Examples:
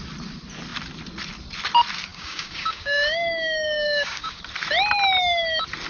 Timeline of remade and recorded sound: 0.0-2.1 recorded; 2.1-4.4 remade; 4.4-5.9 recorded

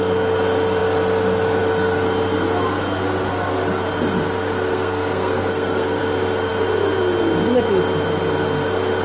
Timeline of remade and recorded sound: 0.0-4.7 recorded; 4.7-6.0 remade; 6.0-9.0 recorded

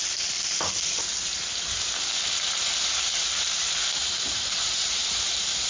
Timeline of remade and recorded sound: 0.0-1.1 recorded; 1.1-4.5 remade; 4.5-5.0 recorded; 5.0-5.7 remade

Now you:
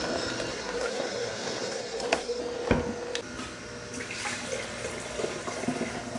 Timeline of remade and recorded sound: 0.0-0.5 recorded; 0.5-2.4 remade; 2.4-6.2 recorded

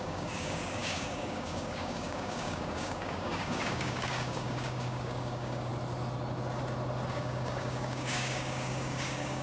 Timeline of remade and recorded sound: 0.0-5.7 remade; 5.7-7.1 recorded; 7.1-9.4 remade